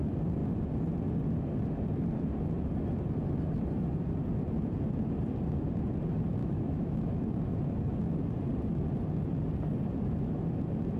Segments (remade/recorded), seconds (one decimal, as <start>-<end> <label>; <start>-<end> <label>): 0.0-6.4 recorded; 6.4-7.3 remade; 7.3-11.0 recorded

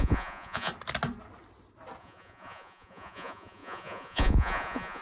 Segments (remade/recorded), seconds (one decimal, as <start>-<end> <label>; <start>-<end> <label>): 0.0-0.7 remade; 0.7-2.0 recorded; 2.0-5.0 remade

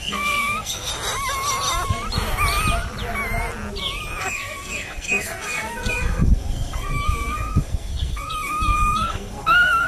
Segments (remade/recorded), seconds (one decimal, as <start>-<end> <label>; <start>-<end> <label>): 0.0-0.9 remade; 0.9-4.2 recorded; 4.2-9.9 remade

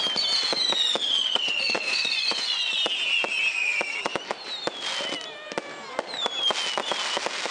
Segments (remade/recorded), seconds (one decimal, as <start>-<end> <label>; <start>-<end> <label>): 0.0-1.1 recorded; 1.1-2.8 remade; 2.8-7.5 recorded

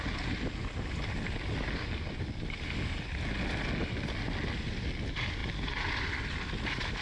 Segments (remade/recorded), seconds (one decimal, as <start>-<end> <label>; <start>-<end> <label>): 0.0-7.0 recorded